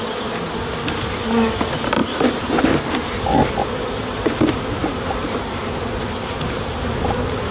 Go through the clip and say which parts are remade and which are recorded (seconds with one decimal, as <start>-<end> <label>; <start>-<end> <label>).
0.0-2.0 recorded; 2.0-3.4 remade; 3.4-4.8 recorded; 4.8-5.6 remade; 5.6-6.0 recorded; 6.0-6.9 remade; 6.9-7.5 recorded